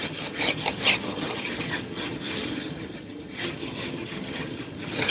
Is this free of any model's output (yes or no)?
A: no